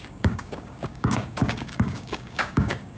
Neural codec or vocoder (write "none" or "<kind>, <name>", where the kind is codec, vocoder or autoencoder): codec, DAC